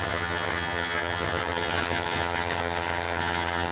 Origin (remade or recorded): remade